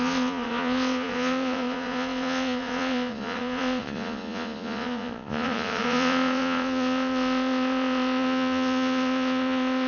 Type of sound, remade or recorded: remade